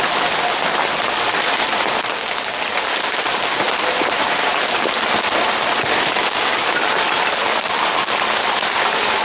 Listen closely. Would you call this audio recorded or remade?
recorded